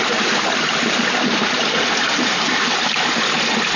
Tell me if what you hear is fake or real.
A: real